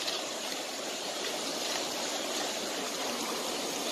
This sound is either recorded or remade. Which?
remade